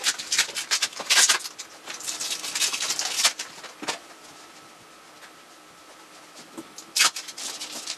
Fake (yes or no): no